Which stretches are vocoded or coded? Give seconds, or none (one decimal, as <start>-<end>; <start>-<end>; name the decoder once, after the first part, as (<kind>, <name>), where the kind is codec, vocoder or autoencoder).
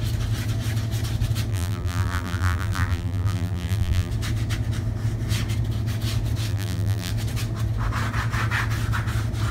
1.5-4.1 (vocoder, BigVGAN v2); 6.5-7.1